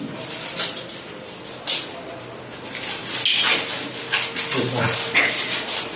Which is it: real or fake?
real